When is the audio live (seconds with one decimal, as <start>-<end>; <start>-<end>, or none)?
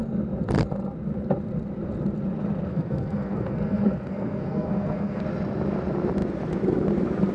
0.0-2.7; 5.2-7.3